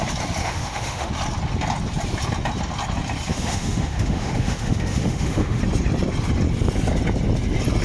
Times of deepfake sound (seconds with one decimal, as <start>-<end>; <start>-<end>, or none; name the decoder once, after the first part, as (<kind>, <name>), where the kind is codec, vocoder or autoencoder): 0.4-1.1 (autoencoder, DAC-VAE); 3.3-5.6

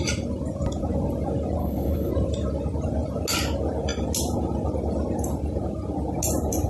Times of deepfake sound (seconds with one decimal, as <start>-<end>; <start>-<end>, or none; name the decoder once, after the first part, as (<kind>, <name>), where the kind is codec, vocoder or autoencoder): 1.6-2.1 (codec, HILCodec)

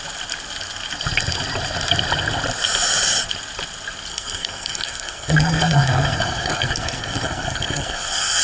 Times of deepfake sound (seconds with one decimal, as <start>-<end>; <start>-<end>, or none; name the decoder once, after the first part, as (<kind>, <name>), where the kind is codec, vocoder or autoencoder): 4.1-8.4 (codec, SNAC)

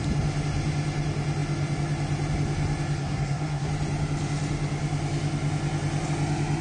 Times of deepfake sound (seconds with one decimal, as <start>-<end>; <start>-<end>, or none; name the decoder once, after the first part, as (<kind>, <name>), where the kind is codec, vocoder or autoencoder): 3.0-3.7 (codec, SNAC)

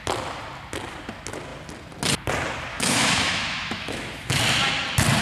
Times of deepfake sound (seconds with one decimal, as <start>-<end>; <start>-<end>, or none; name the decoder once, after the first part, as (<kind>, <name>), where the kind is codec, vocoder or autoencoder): 2.7-4.4 (autoencoder, DAC-VAE)